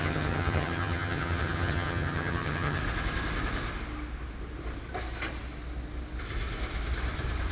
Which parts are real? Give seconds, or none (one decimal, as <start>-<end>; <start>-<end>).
2.8-7.5